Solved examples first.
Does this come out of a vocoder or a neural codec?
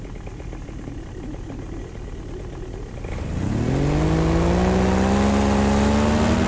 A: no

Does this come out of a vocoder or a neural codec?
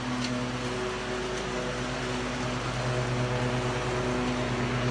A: no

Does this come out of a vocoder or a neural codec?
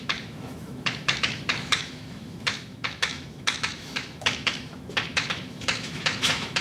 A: yes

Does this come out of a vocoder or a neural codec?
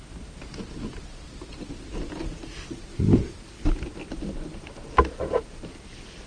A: no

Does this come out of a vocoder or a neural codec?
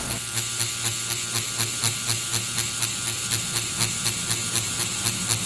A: no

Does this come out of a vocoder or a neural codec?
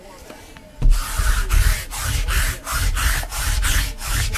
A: no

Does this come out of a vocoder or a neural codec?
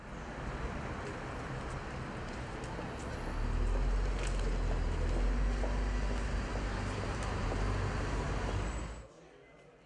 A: no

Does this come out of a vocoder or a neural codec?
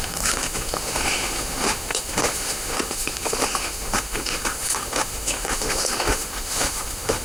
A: yes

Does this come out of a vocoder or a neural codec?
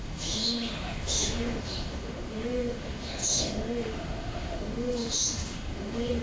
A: yes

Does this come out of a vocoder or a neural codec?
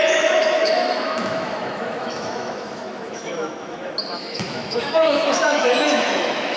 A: yes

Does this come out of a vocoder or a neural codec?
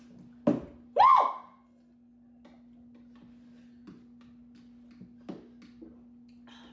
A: no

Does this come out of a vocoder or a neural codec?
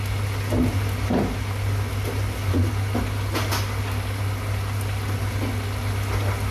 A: no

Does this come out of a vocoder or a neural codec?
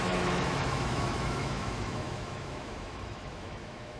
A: yes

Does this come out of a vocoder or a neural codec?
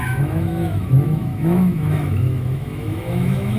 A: yes